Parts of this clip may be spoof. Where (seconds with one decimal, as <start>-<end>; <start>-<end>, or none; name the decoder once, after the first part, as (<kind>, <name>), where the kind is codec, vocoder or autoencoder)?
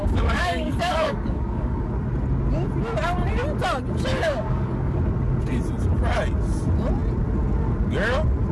0.0-1.9 (codec, DAC); 4.1-5.0